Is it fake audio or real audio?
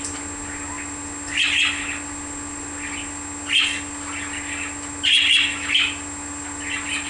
real